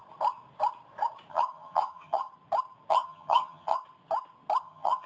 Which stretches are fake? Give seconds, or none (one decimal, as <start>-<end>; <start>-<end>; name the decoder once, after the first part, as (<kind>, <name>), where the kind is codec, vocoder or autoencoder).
1.3-2.3 (vocoder, HiFi-GAN); 2.9-3.8; 4.6-5.1